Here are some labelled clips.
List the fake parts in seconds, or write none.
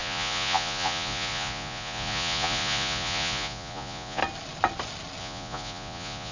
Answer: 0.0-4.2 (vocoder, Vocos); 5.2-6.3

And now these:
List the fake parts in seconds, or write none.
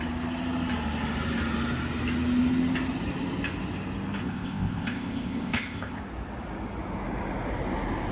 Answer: 4.2-6.0 (codec, ZipCodec)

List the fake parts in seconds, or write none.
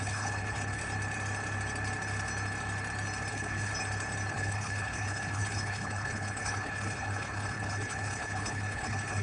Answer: 0.0-0.8 (codec, HILCodec); 3.3-3.7; 4.3-9.2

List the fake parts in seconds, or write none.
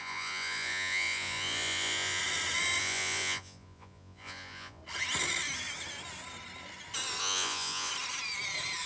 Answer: 0.0-2.2 (vocoder, Vocos); 2.8-4.8; 7.2-7.9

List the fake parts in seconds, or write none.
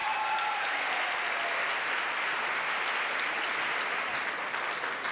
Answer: none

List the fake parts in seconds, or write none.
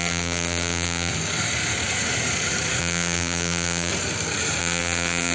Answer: 0.0-1.1 (vocoder, BigVGAN v2); 2.8-3.9; 4.6-5.3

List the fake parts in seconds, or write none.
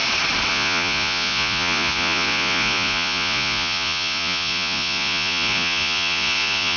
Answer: 0.5-6.8 (vocoder, Vocos)